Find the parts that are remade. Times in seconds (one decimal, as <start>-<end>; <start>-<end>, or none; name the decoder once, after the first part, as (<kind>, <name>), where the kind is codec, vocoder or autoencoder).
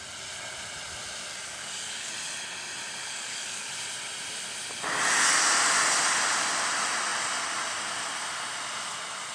1.3-2.1 (codec, DAC); 3.0-3.7